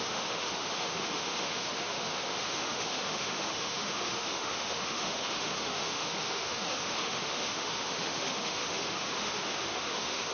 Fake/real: fake